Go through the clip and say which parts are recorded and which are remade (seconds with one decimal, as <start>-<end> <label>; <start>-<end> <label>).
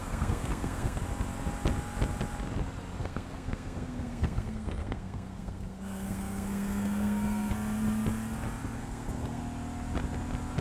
0.0-1.0 remade; 1.0-3.0 recorded; 3.0-7.5 remade; 7.5-8.8 recorded; 8.8-9.4 remade; 9.4-10.6 recorded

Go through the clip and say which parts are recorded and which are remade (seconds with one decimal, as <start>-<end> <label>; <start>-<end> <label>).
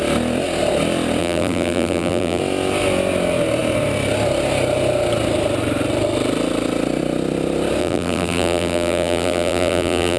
0.0-1.2 recorded; 1.2-2.4 remade; 2.4-7.8 recorded; 7.8-10.2 remade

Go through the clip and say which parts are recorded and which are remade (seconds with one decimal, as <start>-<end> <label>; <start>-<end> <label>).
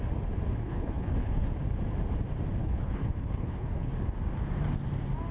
0.0-0.6 recorded; 0.6-1.5 remade; 1.5-2.6 recorded; 2.6-3.9 remade; 3.9-5.3 recorded